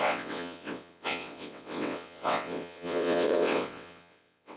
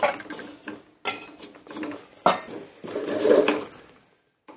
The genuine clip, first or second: second